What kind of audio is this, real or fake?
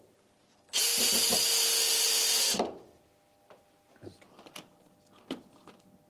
real